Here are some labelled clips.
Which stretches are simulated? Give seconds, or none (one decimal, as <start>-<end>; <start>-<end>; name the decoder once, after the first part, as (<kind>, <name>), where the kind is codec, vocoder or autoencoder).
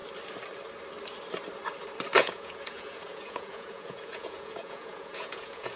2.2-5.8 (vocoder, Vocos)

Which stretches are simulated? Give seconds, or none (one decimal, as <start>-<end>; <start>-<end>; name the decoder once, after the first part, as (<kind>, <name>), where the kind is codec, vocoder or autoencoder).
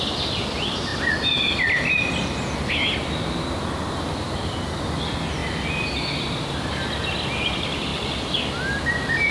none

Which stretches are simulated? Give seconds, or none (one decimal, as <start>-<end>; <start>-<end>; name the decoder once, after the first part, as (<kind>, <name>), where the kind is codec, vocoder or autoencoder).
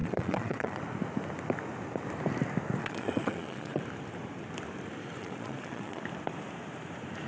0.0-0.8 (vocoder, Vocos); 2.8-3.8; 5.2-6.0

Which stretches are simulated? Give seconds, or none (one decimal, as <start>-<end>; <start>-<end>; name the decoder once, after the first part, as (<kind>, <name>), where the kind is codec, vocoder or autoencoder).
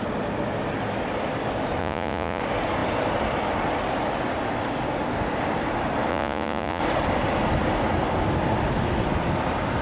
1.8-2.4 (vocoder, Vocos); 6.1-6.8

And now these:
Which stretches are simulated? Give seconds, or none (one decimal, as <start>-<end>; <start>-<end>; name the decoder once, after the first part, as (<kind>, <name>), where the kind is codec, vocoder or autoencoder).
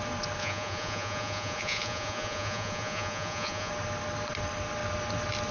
0.4-3.7 (vocoder, Vocos)